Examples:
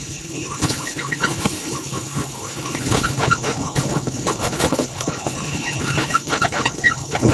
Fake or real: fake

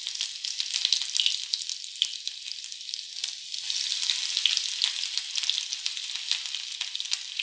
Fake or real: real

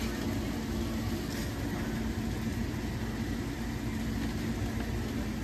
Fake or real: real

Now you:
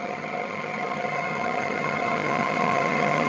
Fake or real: fake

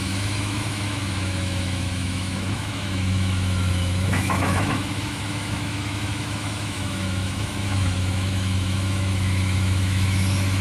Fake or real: fake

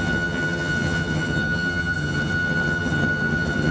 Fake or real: fake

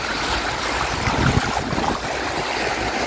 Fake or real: real